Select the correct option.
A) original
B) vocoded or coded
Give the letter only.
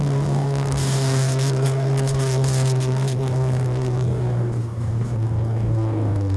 B